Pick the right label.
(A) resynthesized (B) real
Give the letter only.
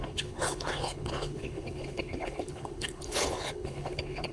A